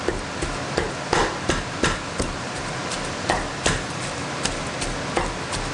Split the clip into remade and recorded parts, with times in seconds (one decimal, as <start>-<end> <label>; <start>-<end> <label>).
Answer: 0.0-1.2 recorded; 1.2-4.6 remade; 4.6-5.7 recorded